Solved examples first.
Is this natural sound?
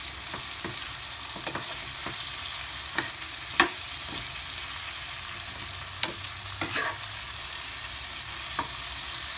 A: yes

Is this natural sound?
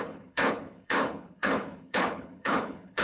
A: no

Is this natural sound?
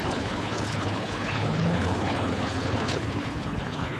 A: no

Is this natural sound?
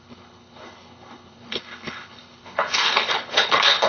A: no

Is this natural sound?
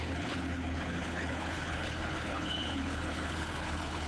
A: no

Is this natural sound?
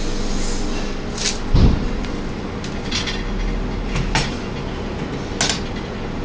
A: yes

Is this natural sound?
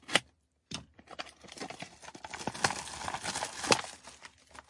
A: yes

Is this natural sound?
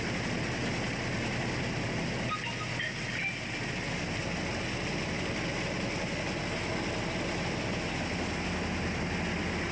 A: yes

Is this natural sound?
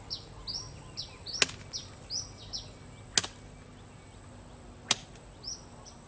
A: yes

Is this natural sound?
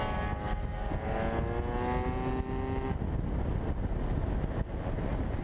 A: yes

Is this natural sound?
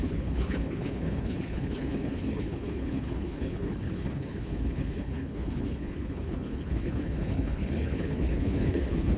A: no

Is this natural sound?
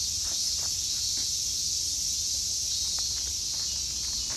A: yes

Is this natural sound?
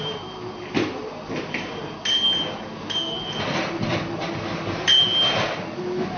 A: yes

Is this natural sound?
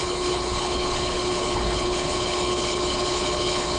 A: no